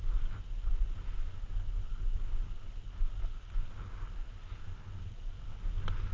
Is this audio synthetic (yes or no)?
no